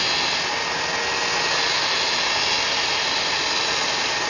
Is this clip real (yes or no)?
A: yes